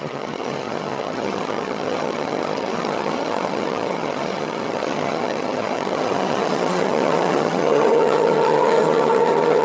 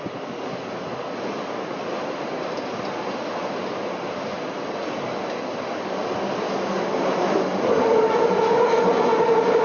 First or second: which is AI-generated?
first